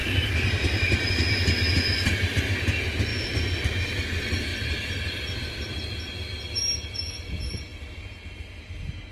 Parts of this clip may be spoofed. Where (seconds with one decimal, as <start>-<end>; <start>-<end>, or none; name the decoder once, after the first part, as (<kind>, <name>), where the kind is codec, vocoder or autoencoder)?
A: 0.0-1.1 (vocoder, BigVGAN v2); 4.5-5.6